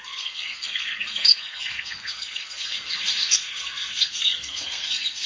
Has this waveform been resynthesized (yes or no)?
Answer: yes